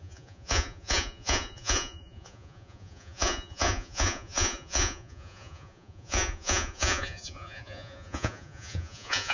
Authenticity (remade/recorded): remade